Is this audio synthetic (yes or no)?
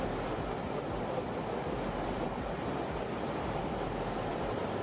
no